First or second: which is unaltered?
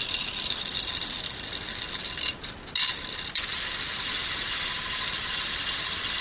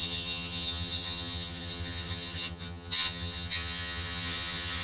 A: first